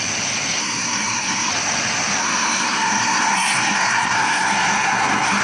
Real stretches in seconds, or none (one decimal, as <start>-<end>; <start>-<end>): 0.0-0.6; 1.5-2.2